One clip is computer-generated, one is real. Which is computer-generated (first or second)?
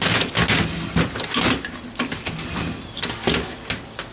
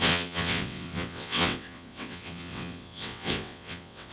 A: second